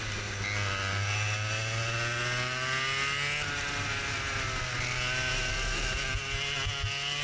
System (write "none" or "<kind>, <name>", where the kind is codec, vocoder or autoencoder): none